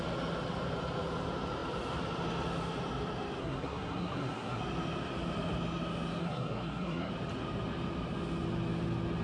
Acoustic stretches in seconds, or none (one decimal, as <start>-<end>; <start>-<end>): 0.0-3.4; 4.6-6.2; 7.1-9.2